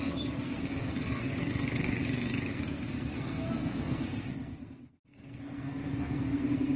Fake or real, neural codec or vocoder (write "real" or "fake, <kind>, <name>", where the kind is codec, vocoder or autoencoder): fake, codec, SNAC